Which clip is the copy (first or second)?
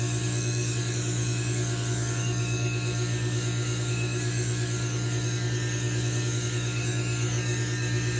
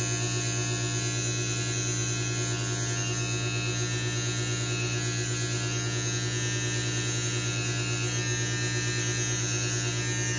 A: first